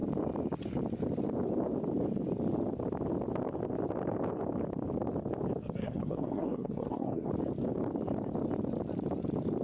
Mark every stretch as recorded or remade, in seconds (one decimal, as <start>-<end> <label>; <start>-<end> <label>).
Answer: 0.0-5.8 recorded; 5.8-7.3 remade; 7.3-9.6 recorded